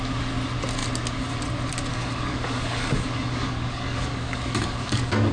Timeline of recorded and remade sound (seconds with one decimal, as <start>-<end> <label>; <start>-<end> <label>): 0.0-1.9 recorded; 1.9-5.3 remade